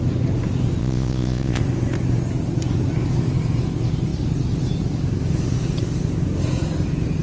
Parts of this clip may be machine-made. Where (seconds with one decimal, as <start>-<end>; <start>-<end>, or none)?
0.8-1.6